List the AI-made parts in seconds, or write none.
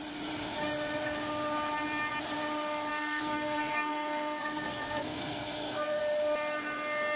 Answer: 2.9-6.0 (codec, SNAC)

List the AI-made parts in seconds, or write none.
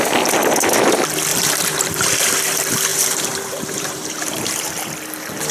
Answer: 1.3-2.0 (vocoder, BigVGAN v2); 2.9-4.9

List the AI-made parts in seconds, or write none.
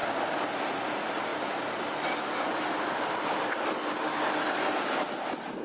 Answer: 1.3-3.9 (vocoder, BigVGAN v2)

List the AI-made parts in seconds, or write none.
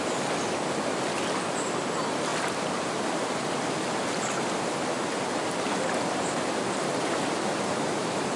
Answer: none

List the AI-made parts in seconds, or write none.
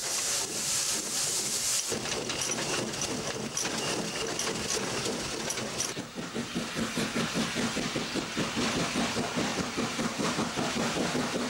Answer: 0.0-1.1 (vocoder, BigVGAN v2); 9.5-10.7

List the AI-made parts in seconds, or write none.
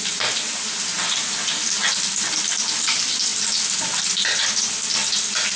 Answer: none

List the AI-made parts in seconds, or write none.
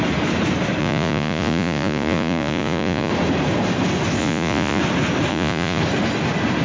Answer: 0.8-3.1 (vocoder, Vocos); 4.2-4.8; 5.3-5.8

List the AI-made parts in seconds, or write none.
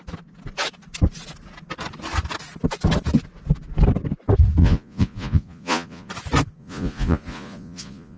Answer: 4.6-6.1 (vocoder, Vocos); 6.6-8.2